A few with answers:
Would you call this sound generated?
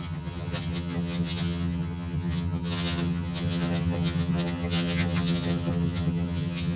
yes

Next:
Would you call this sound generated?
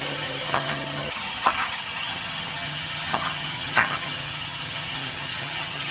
yes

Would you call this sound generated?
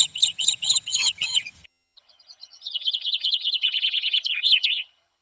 yes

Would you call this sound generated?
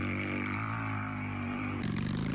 no